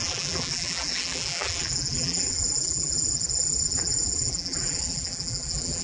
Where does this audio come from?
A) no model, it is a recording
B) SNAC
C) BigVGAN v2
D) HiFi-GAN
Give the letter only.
C